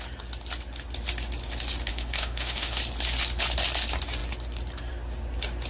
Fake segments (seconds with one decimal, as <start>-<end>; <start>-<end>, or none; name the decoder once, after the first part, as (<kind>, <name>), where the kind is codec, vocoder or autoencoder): 1.9-2.8 (autoencoder, DAC-VAE)